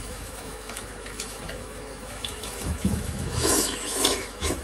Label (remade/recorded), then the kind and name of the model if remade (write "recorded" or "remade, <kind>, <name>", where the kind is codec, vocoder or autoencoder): remade, autoencoder, DAC-VAE